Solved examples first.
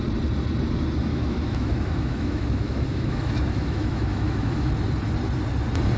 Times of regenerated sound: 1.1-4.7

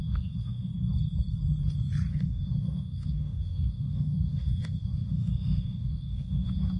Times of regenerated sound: 0.0-0.7; 2.1-6.8

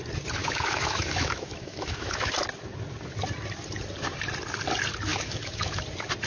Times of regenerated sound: 0.4-2.3; 5.1-5.8

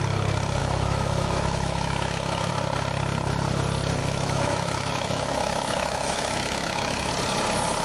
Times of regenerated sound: 0.6-2.5; 4.0-7.1

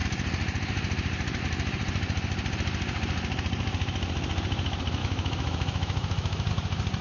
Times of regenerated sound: 5.0-6.5

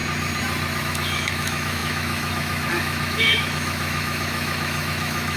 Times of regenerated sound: 0.8-5.4

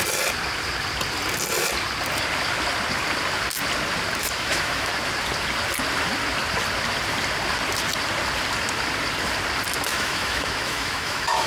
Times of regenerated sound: 4.2-4.9; 9.9-11.5